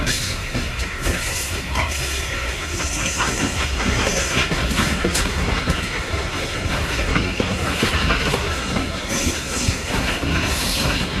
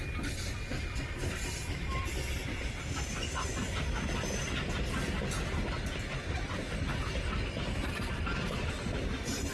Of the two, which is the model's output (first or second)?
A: first